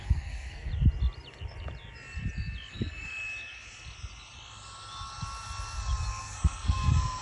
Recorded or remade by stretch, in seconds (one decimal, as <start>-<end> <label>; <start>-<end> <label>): 0.0-0.7 remade; 0.7-2.7 recorded; 2.7-3.1 remade; 3.1-6.2 recorded; 6.2-7.2 remade